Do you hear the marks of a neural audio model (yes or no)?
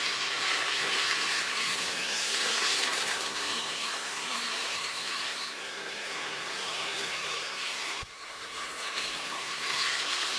yes